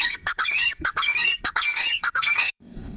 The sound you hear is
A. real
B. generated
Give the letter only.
B